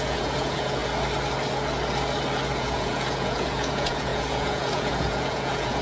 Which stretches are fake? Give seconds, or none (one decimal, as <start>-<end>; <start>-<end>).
0.0-0.8; 2.6-5.8